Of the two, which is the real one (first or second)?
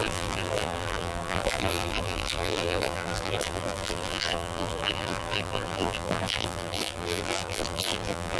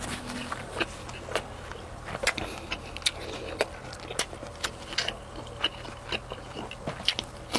second